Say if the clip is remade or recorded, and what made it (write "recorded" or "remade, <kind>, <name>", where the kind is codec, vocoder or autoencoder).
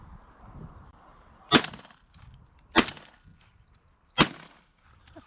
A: recorded